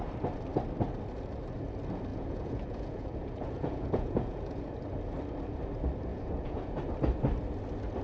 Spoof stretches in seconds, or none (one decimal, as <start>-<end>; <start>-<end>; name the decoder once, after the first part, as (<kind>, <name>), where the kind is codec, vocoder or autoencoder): 2.1-4.7 (vocoder, Vocos); 6.1-6.8